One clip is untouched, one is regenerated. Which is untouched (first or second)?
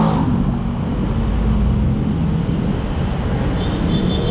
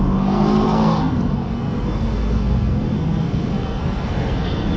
first